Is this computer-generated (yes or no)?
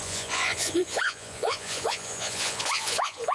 yes